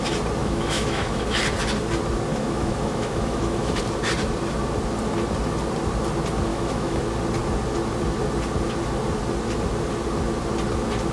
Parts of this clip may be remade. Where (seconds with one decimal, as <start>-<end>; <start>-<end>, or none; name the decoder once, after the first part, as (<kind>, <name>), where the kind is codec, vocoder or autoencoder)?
0.4-1.4 (autoencoder, DAC-VAE); 2.3-3.8; 6.5-7.0